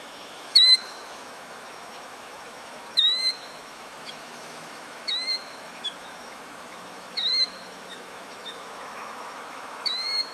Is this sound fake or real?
fake